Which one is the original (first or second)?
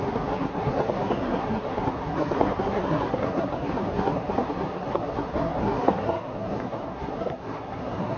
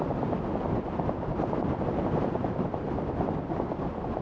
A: second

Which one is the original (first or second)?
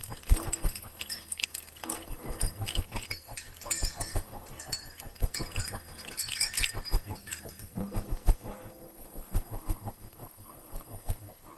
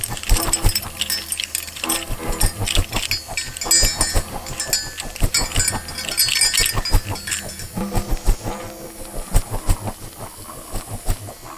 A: second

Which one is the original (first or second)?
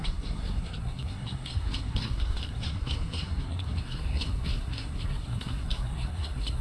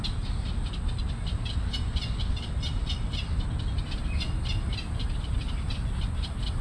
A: second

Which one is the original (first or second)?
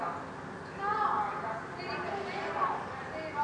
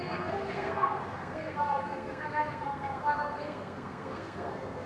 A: first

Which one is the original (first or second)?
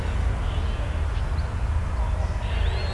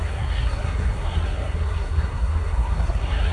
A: first